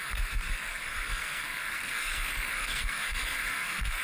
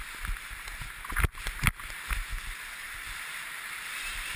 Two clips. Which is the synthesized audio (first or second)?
first